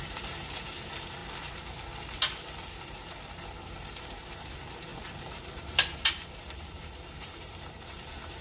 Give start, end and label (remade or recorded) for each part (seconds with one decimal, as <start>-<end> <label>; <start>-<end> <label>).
0.0-1.2 remade; 1.2-4.0 recorded; 4.0-8.4 remade